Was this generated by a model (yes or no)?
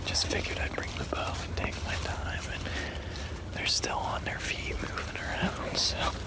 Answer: no